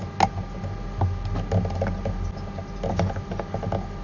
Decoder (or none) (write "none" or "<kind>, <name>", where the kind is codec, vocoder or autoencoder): none